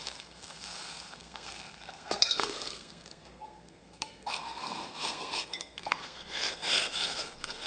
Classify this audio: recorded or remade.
remade